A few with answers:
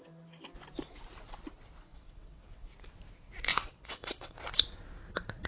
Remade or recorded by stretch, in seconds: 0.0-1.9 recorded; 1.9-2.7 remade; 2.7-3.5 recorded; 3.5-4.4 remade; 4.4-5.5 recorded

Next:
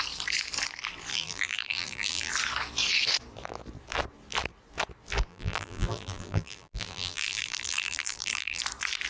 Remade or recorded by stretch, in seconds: 0.0-1.1 recorded; 1.1-2.3 remade; 2.3-5.3 recorded; 5.3-8.6 remade; 8.6-9.1 recorded

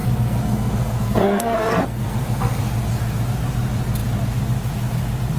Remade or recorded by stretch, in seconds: 0.0-2.6 remade; 2.6-5.4 recorded

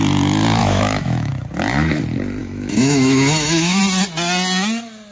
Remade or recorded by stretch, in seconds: 0.0-0.6 recorded; 0.6-1.3 remade; 1.3-2.4 recorded; 2.4-3.8 remade; 3.8-5.1 recorded

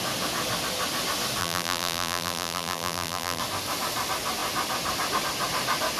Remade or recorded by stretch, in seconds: 0.0-1.4 recorded; 1.4-3.4 remade; 3.4-6.0 recorded

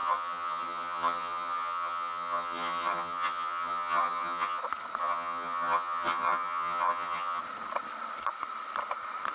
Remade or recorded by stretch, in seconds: 0.0-4.6 remade; 4.6-5.0 recorded; 5.0-7.4 remade; 7.4-9.3 recorded

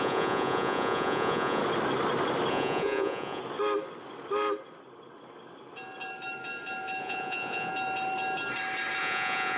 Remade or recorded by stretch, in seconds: 0.0-1.6 remade; 1.6-2.5 recorded; 2.5-3.4 remade; 3.4-7.0 recorded; 7.0-7.7 remade; 7.7-9.0 recorded; 9.0-9.6 remade